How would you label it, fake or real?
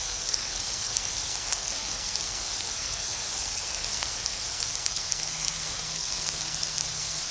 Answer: fake